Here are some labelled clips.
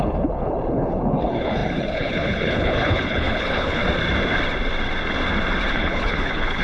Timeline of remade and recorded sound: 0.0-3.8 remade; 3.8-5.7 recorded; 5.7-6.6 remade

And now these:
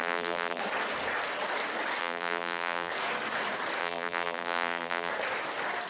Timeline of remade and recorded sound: 0.0-0.6 remade; 0.6-2.0 recorded; 2.0-2.9 remade; 2.9-3.8 recorded; 3.8-5.1 remade; 5.1-5.9 recorded

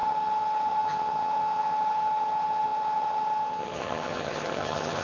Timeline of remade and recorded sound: 0.0-5.0 remade

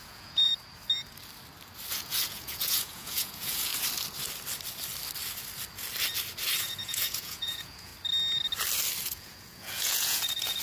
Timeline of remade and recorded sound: 0.0-0.5 remade; 0.5-1.9 recorded; 1.9-3.7 remade; 3.7-6.6 recorded; 6.6-7.9 remade; 7.9-9.0 recorded; 9.0-10.6 remade

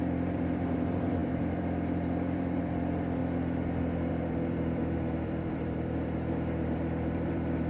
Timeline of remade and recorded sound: 0.0-3.2 remade; 3.2-4.1 recorded; 4.1-7.7 remade

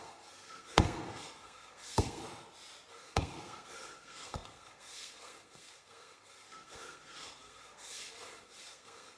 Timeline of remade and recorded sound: 0.0-2.2 remade; 2.2-2.9 recorded; 2.9-9.2 remade

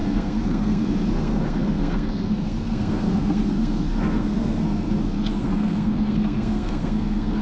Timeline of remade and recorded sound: 0.0-7.4 remade

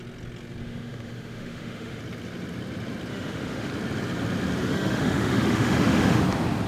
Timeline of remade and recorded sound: 0.0-0.6 recorded; 0.6-2.0 remade; 2.0-3.1 recorded; 3.1-3.7 remade; 3.7-4.6 recorded; 4.6-6.2 remade; 6.2-6.7 recorded